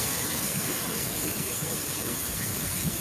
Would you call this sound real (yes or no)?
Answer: no